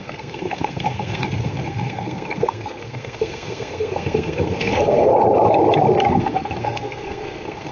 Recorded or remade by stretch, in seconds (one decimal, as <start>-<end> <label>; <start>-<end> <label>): 0.0-5.1 remade; 5.1-6.1 recorded; 6.1-7.7 remade